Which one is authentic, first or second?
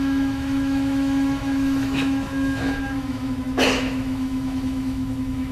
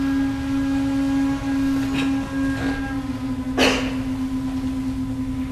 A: second